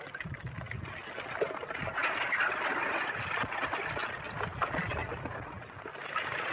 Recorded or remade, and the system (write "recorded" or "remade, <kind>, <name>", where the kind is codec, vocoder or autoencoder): recorded